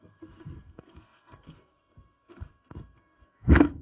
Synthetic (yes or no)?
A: yes